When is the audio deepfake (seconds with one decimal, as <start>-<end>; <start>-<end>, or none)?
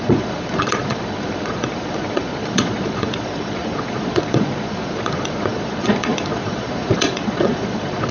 0.0-8.1